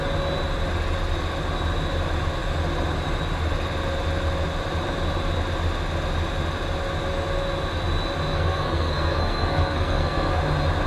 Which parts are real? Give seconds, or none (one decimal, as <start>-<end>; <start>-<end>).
0.0-8.3; 10.4-10.9